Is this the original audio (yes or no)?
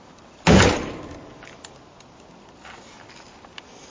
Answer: yes